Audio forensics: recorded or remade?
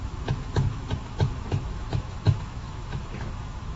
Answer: remade